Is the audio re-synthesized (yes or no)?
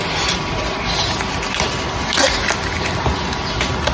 no